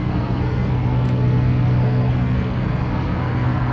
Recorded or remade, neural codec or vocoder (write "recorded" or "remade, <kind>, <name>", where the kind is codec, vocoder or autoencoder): remade, codec, SNAC